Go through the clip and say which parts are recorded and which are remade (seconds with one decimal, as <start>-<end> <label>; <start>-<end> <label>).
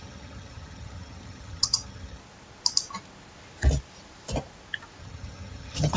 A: 0.0-2.2 remade; 2.2-5.0 recorded; 5.0-6.0 remade